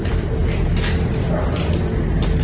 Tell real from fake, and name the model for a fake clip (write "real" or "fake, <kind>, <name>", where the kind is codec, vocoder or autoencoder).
real